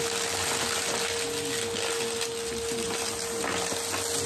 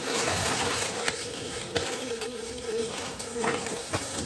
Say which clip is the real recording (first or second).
first